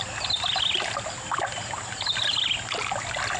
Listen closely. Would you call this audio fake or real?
real